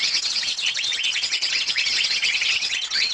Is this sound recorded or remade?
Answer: remade